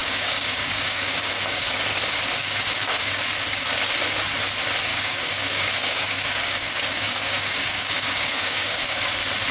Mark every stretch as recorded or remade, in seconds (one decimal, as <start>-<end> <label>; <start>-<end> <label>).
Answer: 0.0-1.6 remade; 1.6-2.4 recorded; 2.4-3.2 remade; 3.2-4.9 recorded; 4.9-9.0 remade; 9.0-9.5 recorded